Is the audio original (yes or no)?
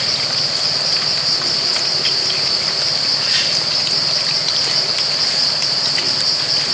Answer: yes